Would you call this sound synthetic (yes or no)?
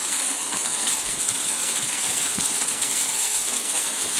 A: yes